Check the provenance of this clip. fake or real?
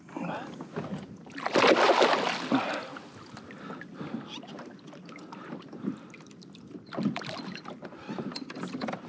real